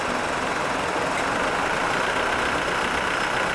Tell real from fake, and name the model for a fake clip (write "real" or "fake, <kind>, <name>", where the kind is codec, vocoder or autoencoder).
real